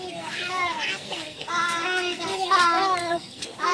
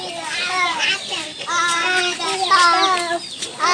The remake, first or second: first